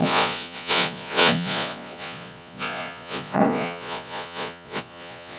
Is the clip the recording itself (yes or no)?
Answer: no